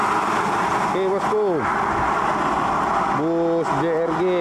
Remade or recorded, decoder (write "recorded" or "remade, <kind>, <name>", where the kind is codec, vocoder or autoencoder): recorded